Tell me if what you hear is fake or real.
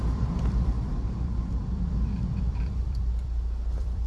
fake